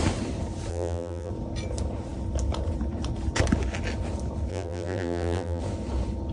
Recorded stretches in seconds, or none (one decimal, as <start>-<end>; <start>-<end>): 0.0-0.7; 1.3-4.5; 5.6-6.3